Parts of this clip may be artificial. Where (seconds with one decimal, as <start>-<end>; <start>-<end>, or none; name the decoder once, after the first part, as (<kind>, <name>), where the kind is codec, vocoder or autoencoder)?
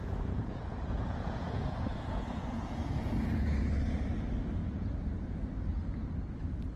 0.0-3.7 (vocoder, Vocos); 4.6-5.4